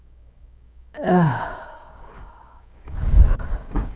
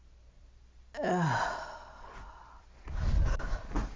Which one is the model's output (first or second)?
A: first